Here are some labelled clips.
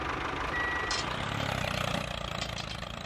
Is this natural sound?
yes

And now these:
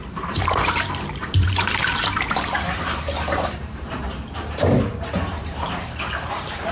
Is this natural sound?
no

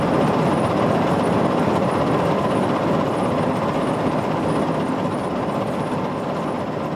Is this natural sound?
yes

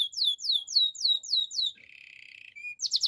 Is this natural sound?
yes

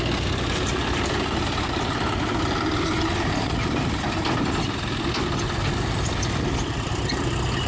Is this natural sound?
no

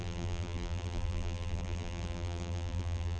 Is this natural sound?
no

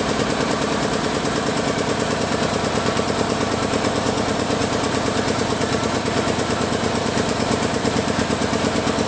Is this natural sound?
no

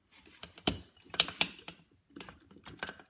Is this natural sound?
yes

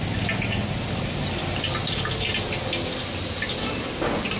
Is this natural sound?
yes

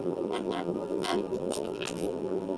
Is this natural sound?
no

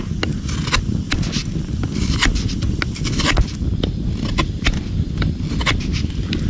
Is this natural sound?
yes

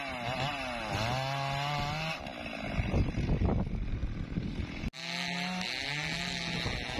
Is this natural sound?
yes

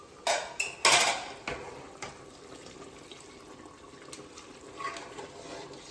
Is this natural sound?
yes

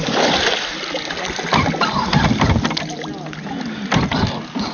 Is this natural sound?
yes